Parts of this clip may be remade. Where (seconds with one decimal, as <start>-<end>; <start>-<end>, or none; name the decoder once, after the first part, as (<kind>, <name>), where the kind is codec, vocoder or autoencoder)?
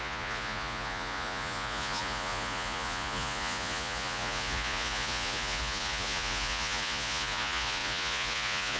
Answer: 0.0-8.8 (vocoder, Vocos)